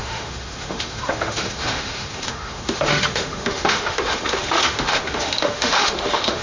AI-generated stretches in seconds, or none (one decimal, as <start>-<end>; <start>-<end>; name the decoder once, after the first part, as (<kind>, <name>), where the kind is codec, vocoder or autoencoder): 0.0-6.4 (autoencoder, DAC-VAE)